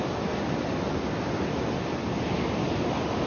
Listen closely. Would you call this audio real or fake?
fake